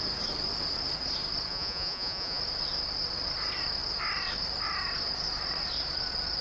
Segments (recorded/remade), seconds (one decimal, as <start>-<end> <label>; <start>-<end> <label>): 0.0-1.5 recorded; 1.5-2.4 remade; 2.4-6.4 recorded